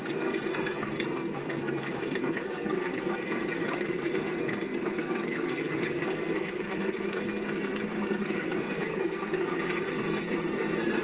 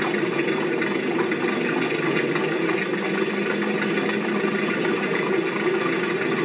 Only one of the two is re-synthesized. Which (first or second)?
first